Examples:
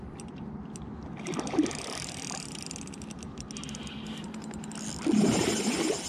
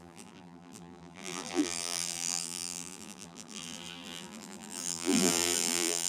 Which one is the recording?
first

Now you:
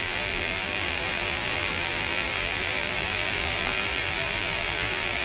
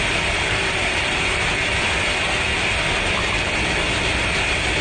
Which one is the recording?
second